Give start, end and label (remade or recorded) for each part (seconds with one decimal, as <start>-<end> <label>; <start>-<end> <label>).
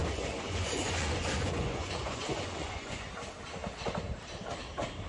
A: 0.0-3.1 remade; 3.1-5.1 recorded